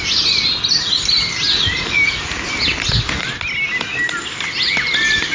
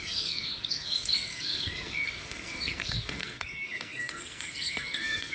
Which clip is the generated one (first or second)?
second